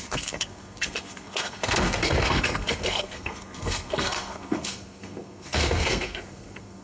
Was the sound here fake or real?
fake